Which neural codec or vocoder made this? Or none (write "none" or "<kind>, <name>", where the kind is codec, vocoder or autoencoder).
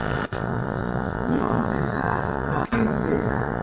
vocoder, Vocos